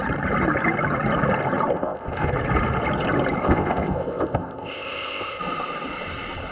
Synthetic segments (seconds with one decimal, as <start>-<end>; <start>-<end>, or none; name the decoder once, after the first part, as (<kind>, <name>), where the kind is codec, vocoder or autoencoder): 1.7-2.3 (codec, ZipCodec); 3.4-5.4